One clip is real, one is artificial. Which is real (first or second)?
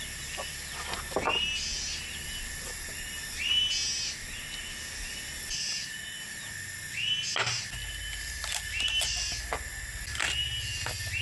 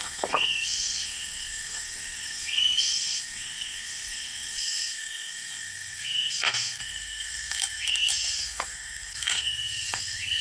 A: first